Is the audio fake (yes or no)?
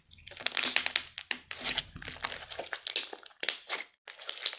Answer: no